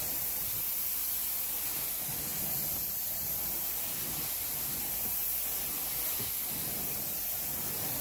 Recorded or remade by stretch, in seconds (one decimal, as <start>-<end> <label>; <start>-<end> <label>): 0.0-8.0 recorded